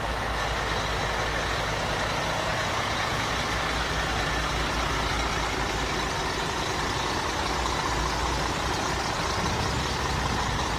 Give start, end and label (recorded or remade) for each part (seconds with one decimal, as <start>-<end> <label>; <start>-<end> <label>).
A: 0.0-2.5 recorded; 2.5-3.3 remade; 3.3-10.8 recorded